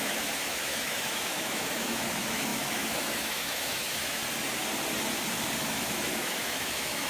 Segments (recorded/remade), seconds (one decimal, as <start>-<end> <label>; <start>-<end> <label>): 0.0-4.2 remade; 4.2-5.6 recorded; 5.6-7.1 remade